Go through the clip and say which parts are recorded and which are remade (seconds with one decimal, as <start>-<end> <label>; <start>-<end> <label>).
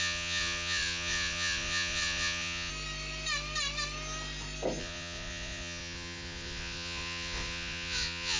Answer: 0.0-2.7 remade; 2.7-4.8 recorded; 4.8-8.4 remade